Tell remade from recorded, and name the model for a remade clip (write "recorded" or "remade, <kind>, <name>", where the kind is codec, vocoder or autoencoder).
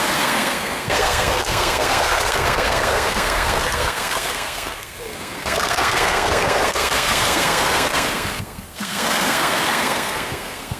remade, codec, SNAC